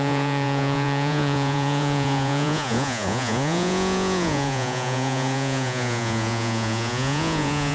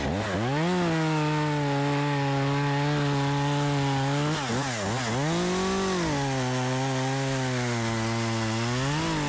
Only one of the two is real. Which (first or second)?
second